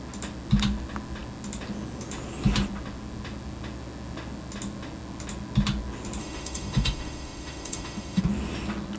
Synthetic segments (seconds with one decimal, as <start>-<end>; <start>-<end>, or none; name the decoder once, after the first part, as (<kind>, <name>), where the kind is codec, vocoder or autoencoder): 6.2-8.2 (autoencoder, DAC-VAE)